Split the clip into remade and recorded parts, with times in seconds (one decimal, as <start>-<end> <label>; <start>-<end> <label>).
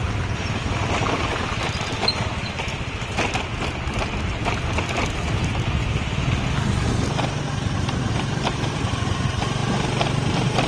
0.0-10.7 recorded